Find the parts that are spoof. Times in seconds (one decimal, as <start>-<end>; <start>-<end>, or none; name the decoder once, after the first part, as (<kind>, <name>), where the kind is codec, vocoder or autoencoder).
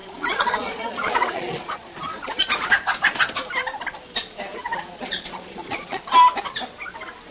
0.0-2.4 (vocoder, Vocos); 4.5-6.0